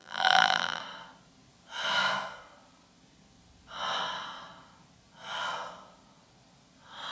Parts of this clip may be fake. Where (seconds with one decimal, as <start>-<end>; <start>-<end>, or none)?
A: 0.0-0.8